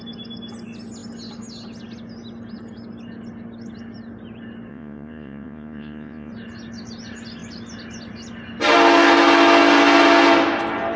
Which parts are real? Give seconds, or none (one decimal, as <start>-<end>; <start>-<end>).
0.0-4.7; 6.3-11.0